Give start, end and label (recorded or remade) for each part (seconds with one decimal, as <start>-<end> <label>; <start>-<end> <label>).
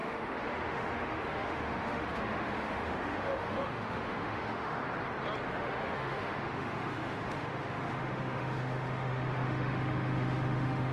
0.0-4.8 remade; 4.8-5.6 recorded; 5.6-10.9 remade